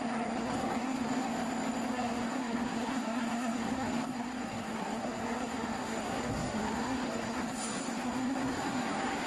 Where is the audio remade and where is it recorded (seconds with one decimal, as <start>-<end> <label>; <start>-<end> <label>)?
0.0-1.3 remade; 1.3-1.9 recorded; 1.9-9.3 remade